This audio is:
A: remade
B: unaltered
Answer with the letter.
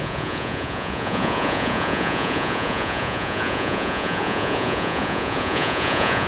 A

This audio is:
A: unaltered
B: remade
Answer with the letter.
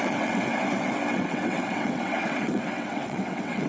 B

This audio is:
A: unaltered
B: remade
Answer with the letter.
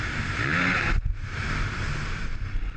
A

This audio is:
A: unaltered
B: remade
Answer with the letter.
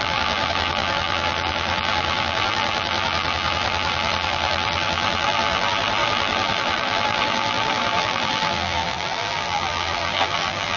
B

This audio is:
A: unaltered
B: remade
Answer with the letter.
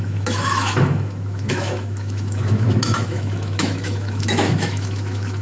B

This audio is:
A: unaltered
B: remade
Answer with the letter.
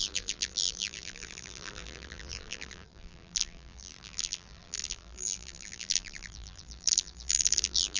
B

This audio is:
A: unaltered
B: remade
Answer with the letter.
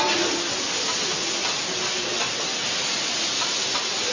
A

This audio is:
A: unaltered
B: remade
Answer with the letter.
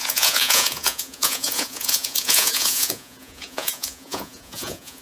B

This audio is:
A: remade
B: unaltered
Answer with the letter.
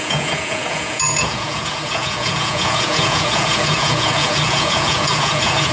A